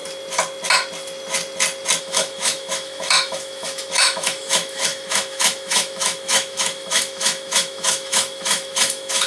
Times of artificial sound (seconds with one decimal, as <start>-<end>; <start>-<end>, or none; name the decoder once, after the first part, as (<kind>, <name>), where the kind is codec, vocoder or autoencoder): 2.0-9.3 (autoencoder, DAC-VAE)